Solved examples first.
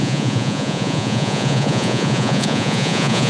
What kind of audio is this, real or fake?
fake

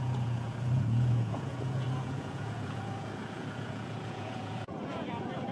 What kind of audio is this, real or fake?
fake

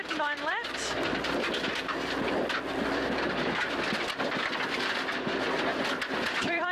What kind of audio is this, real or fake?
fake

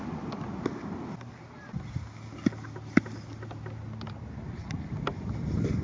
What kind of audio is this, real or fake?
real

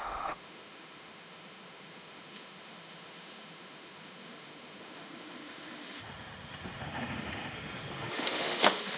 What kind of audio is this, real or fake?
fake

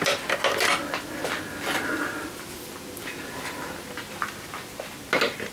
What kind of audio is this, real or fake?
real